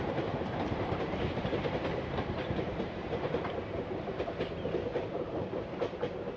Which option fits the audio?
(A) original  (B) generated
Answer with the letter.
B